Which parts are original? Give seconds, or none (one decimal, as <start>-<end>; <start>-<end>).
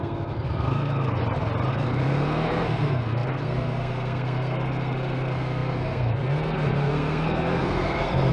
1.2-1.7